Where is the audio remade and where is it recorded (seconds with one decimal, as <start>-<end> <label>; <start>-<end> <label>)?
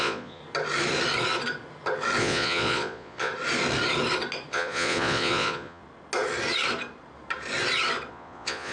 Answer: 0.0-0.4 remade; 0.4-2.2 recorded; 2.2-3.3 remade; 3.3-4.5 recorded; 4.5-5.8 remade; 5.8-8.1 recorded; 8.1-8.7 remade